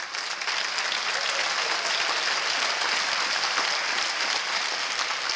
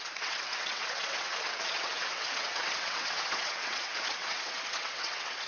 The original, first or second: first